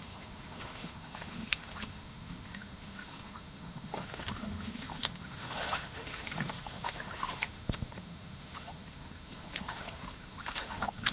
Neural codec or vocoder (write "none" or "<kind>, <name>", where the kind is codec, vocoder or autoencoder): autoencoder, DAC-VAE